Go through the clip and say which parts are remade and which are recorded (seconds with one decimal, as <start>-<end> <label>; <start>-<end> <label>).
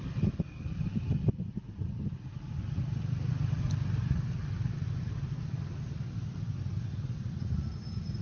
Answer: 0.0-8.2 recorded